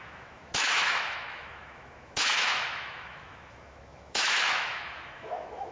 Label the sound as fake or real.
fake